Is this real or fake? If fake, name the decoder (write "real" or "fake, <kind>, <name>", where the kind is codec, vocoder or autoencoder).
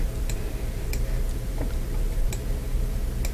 fake, vocoder, BigVGAN v2